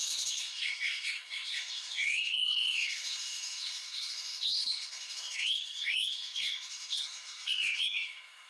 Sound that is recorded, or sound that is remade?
remade